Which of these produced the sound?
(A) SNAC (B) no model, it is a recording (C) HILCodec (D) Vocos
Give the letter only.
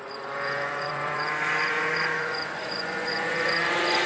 D